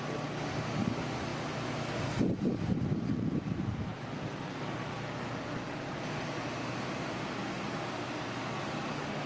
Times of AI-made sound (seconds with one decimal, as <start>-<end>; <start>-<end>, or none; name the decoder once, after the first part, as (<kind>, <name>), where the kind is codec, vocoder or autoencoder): none